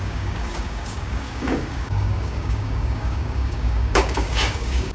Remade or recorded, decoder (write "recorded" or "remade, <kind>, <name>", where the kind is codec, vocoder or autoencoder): remade, codec, DAC